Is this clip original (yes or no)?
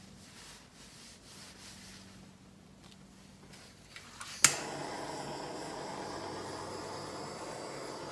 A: yes